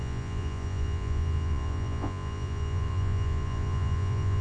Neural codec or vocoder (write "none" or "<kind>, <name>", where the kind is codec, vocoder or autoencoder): vocoder, Vocos